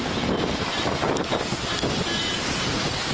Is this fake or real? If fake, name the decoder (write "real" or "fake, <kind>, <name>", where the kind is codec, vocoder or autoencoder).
real